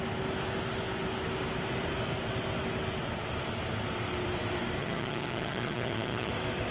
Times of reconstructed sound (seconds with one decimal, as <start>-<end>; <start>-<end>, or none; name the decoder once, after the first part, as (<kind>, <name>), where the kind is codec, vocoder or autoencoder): 4.8-6.3 (vocoder, HiFi-GAN)